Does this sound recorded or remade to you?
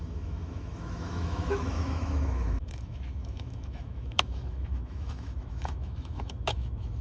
remade